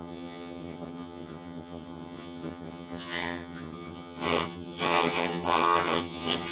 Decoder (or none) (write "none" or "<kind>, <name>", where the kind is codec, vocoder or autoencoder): vocoder, HiFi-GAN